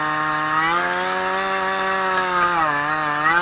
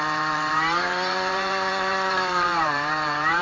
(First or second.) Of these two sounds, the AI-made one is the second